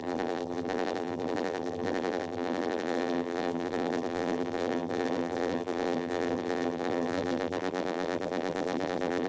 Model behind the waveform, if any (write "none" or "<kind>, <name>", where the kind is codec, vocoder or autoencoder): vocoder, BigVGAN v2